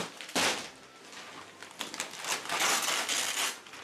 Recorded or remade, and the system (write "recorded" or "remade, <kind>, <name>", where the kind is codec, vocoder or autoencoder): recorded